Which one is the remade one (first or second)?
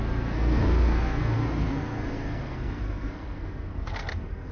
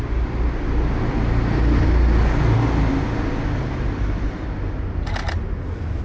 first